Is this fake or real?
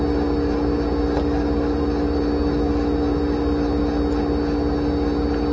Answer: real